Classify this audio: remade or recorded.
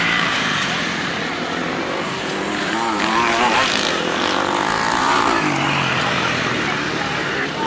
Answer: remade